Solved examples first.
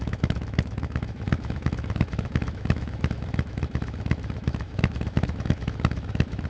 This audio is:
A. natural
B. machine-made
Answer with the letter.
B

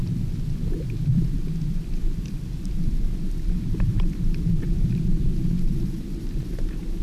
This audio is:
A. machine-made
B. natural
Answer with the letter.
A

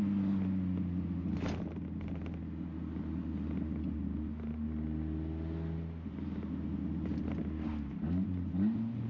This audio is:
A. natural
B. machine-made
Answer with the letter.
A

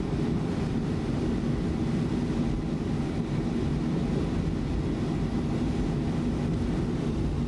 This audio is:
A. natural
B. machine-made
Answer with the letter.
A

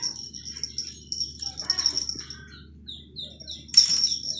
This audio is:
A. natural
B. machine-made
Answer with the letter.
A